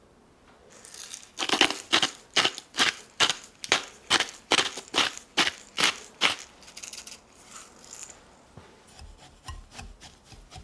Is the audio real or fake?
real